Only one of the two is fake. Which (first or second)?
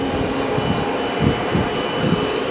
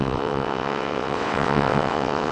second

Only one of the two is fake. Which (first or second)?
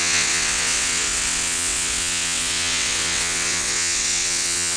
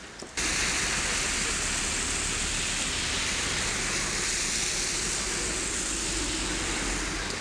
first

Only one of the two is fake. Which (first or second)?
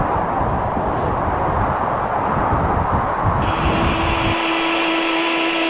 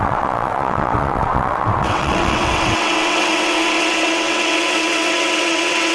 second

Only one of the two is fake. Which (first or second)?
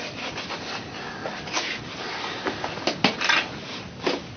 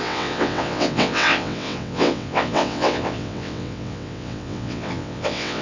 second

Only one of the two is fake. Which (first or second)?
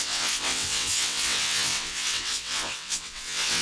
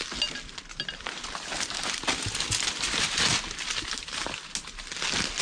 first